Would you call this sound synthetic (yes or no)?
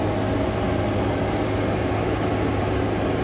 no